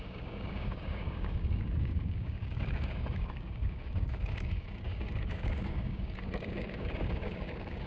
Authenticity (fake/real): fake